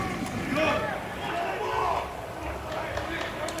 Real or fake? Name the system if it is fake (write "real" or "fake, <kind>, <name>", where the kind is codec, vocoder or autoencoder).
real